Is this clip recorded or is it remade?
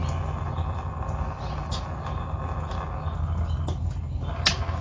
recorded